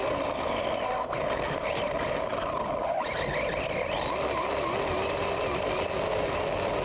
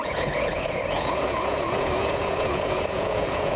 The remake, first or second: second